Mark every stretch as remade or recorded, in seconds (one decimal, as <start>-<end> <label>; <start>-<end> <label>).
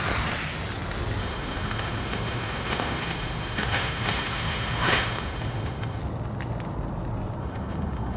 0.0-1.2 recorded; 1.2-6.0 remade; 6.0-7.4 recorded; 7.4-8.2 remade